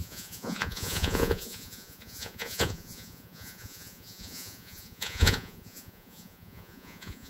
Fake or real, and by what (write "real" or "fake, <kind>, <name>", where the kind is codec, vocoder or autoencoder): fake, vocoder, Vocos